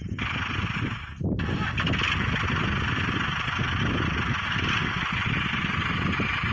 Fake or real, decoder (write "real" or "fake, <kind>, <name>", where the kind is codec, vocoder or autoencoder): real